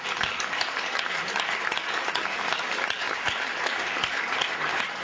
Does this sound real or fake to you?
fake